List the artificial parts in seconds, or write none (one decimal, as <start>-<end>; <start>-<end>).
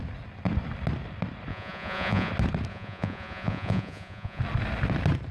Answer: 1.5-2.3; 2.7-4.4